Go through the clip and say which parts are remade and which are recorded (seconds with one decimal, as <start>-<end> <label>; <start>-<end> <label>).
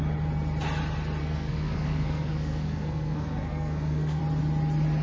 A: 0.0-1.2 recorded; 1.2-4.2 remade; 4.2-5.0 recorded